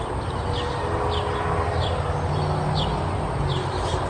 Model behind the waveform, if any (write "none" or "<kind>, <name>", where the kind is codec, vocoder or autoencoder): none